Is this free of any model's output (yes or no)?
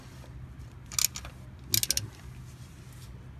yes